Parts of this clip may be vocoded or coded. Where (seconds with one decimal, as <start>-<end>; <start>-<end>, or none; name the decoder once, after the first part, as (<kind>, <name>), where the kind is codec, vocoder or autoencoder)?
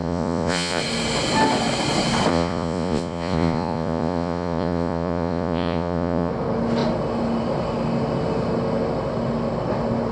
0.0-0.8 (vocoder, Vocos); 2.3-6.3